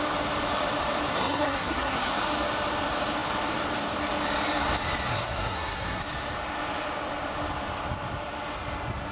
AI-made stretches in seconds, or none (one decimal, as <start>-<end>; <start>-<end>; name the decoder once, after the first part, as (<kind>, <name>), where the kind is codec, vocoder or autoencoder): 1.1-2.1 (codec, SNAC); 5.1-6.0